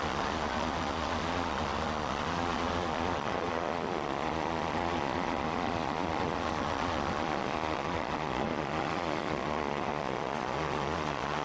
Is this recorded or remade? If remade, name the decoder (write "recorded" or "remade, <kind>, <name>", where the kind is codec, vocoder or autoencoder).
remade, vocoder, Vocos